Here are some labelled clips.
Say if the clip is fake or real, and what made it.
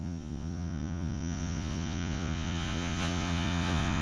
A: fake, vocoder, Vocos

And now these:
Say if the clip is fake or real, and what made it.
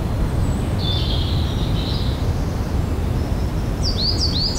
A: real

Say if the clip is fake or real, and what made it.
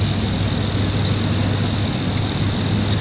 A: real